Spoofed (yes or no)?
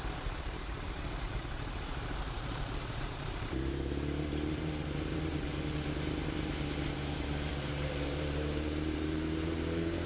yes